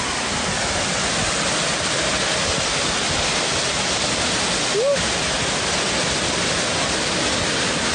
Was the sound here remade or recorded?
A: recorded